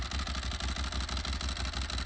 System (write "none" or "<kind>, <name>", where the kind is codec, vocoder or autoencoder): none